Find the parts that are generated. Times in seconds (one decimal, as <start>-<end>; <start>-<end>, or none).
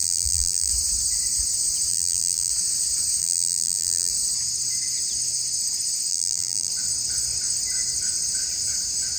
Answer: 0.0-0.7; 1.9-2.5; 3.2-4.1; 6.1-6.7